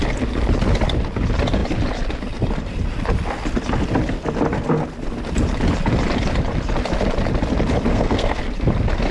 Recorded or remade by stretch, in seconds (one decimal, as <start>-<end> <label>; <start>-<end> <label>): 0.0-7.9 recorded; 7.9-8.4 remade; 8.4-9.1 recorded